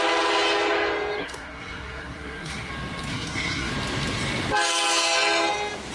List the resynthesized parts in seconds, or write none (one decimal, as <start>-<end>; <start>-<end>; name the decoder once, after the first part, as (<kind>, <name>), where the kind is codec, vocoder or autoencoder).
1.2-2.7 (codec, SNAC); 3.1-3.7